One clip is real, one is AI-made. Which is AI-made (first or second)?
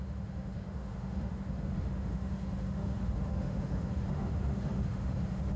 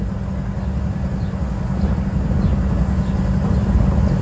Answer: first